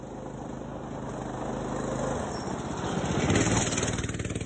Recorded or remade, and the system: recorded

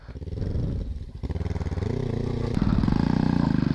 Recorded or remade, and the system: recorded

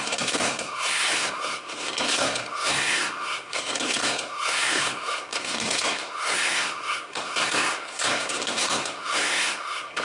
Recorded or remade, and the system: remade, codec, SNAC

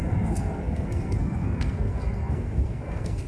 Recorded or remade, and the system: remade, codec, SNAC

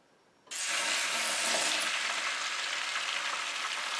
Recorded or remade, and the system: recorded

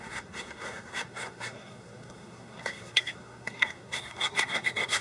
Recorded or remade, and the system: remade, codec, SNAC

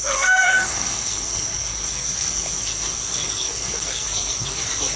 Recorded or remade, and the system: remade, codec, SNAC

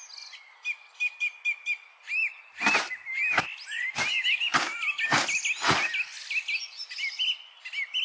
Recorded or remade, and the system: recorded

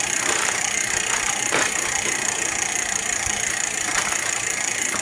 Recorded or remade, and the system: recorded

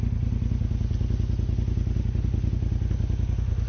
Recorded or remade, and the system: recorded